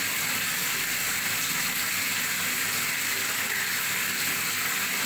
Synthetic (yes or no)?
no